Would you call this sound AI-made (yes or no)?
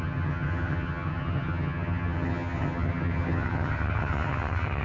yes